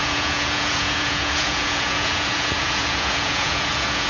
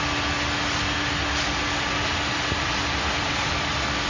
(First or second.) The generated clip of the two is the first